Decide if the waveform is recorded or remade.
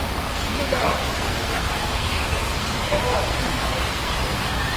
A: remade